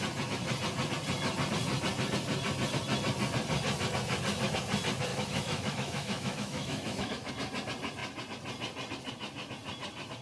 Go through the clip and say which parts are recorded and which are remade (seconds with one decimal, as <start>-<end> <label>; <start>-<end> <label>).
0.0-5.1 recorded; 5.1-7.3 remade; 7.3-10.2 recorded